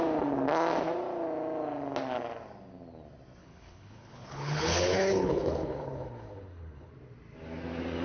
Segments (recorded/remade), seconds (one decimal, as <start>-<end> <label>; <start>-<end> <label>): 0.0-3.4 recorded; 3.4-6.9 remade; 6.9-8.0 recorded